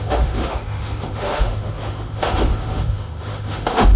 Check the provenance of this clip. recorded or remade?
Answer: remade